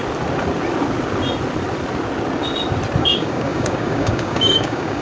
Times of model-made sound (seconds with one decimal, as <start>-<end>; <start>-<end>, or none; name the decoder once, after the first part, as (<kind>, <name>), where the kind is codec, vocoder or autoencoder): 3.0-5.0 (codec, DAC)